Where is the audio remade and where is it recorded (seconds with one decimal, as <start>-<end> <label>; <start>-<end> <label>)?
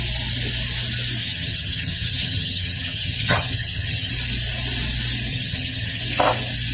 0.0-1.2 recorded; 1.2-4.1 remade; 4.1-5.3 recorded; 5.3-6.0 remade; 6.0-6.7 recorded